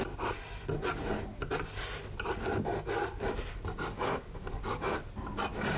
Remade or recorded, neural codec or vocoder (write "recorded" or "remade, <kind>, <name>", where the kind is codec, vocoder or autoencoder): recorded